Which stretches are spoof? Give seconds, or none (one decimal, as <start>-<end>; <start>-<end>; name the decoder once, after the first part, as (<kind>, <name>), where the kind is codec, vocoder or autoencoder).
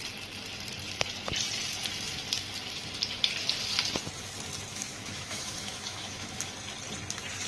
4.7-6.5 (autoencoder, DAC-VAE)